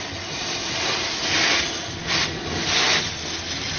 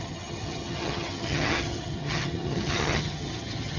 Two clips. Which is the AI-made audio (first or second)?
second